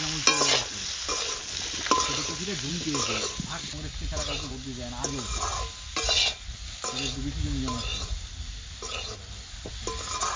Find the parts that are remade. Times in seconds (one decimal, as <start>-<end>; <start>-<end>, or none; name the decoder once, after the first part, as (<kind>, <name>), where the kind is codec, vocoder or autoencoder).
none